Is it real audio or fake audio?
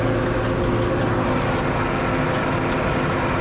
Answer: real